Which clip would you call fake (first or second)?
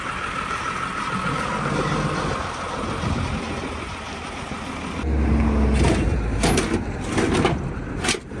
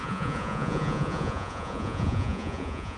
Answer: second